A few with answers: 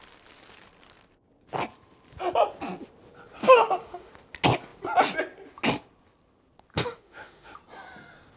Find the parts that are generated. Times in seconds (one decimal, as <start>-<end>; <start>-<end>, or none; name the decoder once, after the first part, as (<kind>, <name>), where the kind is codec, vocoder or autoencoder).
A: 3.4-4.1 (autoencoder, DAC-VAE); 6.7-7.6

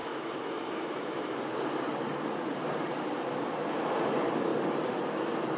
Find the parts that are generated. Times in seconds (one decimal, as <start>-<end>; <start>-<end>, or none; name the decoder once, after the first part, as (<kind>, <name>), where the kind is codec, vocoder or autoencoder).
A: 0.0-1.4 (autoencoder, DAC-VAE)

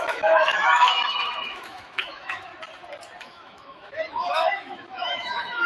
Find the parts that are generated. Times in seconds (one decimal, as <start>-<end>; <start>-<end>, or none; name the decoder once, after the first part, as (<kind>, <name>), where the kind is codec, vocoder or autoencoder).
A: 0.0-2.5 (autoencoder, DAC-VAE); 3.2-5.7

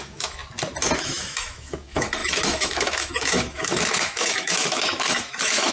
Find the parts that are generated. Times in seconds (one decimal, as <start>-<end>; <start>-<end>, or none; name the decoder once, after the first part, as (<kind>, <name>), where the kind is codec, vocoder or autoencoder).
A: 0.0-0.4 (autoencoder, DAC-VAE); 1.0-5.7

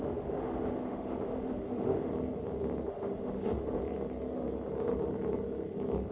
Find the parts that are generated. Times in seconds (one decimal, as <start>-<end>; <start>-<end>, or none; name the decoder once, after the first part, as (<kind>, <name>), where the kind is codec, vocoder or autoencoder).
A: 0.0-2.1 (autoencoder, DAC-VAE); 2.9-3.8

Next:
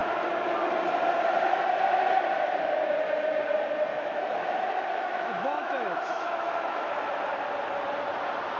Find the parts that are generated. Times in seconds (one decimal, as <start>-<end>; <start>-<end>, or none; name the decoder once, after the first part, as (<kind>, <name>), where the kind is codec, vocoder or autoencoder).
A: 3.9-6.9 (autoencoder, DAC-VAE)

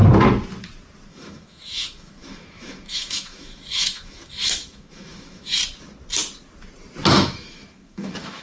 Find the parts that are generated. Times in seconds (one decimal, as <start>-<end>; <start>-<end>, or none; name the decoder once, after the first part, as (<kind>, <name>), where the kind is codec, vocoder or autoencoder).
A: 1.1-5.6 (autoencoder, DAC-VAE); 7.1-8.4